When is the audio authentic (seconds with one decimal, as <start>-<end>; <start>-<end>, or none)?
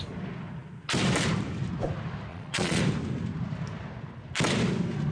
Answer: 0.0-2.3; 2.8-5.1